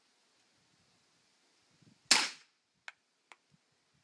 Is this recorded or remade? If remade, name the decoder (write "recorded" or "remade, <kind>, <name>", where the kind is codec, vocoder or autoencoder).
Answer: recorded